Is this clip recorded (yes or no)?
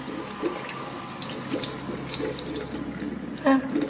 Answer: yes